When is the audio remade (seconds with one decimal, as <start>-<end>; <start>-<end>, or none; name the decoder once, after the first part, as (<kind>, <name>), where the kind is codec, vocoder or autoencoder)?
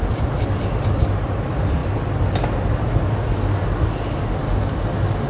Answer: none